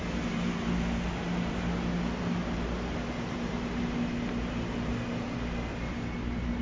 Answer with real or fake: real